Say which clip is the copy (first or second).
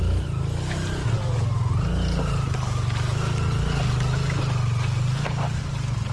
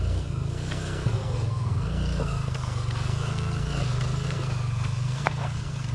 second